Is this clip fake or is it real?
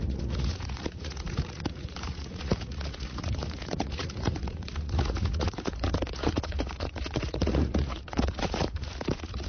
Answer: fake